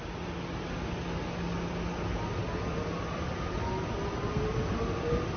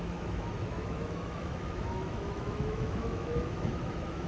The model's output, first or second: second